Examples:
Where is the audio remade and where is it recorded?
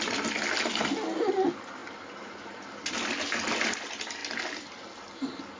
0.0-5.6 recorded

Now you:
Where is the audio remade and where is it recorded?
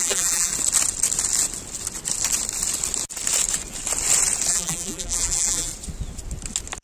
0.0-0.5 remade; 0.5-4.5 recorded; 4.5-5.7 remade; 5.7-6.8 recorded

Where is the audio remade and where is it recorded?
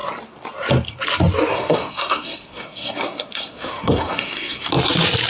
0.0-1.5 recorded; 1.5-4.7 remade; 4.7-5.3 recorded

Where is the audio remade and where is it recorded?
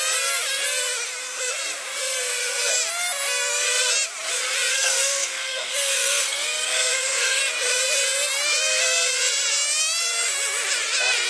0.0-4.7 recorded; 4.7-7.4 remade; 7.4-11.3 recorded